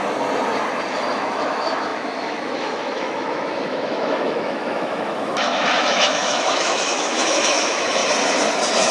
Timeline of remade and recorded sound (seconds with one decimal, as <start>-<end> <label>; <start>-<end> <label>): 0.0-0.9 recorded; 0.9-8.0 remade; 8.0-8.9 recorded